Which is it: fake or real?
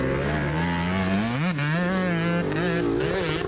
real